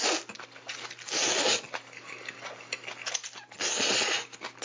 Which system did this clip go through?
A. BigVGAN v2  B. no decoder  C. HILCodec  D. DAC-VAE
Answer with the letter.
B